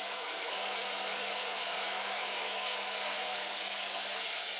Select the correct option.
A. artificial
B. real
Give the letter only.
A